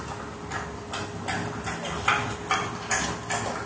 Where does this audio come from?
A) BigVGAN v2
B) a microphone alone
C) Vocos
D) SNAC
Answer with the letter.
B